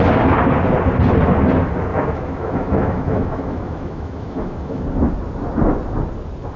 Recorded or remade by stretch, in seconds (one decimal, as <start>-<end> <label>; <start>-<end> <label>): 0.0-1.9 recorded; 1.9-4.8 remade; 4.8-6.6 recorded